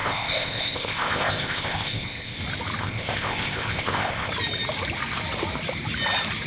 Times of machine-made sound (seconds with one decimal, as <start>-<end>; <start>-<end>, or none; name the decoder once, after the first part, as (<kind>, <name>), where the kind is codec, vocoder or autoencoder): 0.0-2.4 (codec, ZipCodec); 2.8-4.3